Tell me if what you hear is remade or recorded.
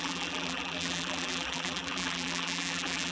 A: remade